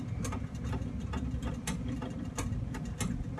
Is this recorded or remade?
recorded